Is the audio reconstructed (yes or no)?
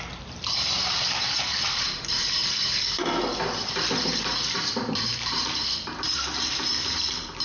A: yes